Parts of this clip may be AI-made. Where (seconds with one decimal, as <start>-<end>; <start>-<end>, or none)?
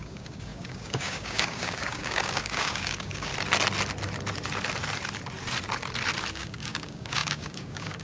0.0-3.3; 6.3-8.0